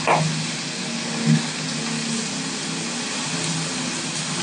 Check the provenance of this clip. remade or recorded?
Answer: recorded